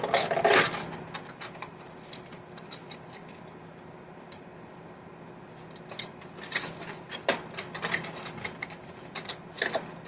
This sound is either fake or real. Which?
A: real